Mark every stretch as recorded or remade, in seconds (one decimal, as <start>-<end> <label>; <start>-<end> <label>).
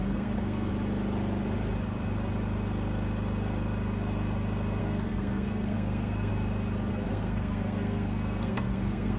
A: 0.0-0.7 remade; 0.7-4.8 recorded; 4.8-6.3 remade; 6.3-6.9 recorded; 6.9-9.2 remade